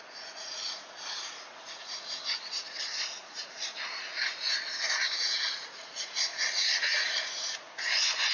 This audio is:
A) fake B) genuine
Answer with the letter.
A